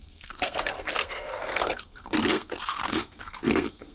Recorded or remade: remade